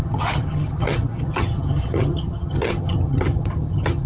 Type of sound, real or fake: fake